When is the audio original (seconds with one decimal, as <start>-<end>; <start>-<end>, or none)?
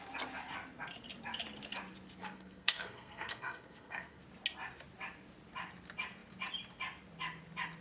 0.0-2.2; 4.2-7.8